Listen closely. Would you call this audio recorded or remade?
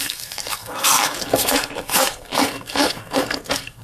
remade